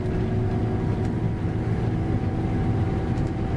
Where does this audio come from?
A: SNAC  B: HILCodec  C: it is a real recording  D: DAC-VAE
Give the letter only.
C